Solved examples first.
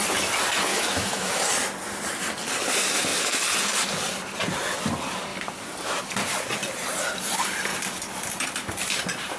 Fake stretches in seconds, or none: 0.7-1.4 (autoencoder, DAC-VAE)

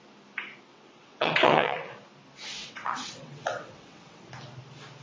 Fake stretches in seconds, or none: 0.7-1.9 (vocoder, WaveNeXt); 2.6-4.2

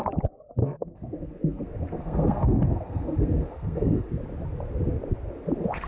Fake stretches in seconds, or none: 0.6-4.1 (codec, SNAC)

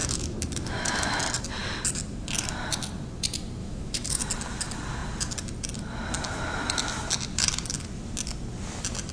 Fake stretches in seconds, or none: 0.0-1.2 (autoencoder, DAC-VAE); 3.6-4.2

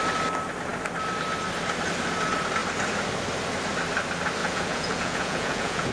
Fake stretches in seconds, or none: 4.4-5.9 (vocoder, Vocos)

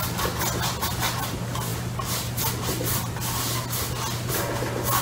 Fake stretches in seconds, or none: none

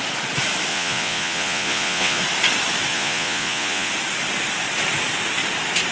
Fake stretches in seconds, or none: 0.7-2.2 (vocoder, Vocos); 2.9-3.9

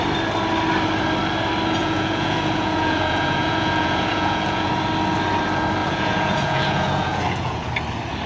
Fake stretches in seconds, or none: 1.8-4.7 (vocoder, Vocos); 5.8-7.7